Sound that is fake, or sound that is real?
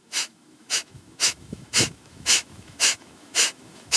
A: fake